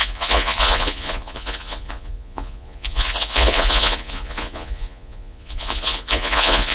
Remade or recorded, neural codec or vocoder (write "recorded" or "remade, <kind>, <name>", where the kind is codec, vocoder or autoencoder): remade, vocoder, Vocos